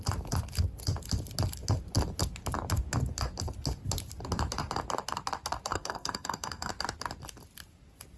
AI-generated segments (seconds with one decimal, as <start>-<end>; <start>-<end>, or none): 5.7-6.7